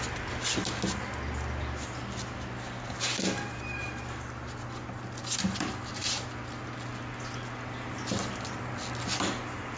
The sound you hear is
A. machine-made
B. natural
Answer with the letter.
B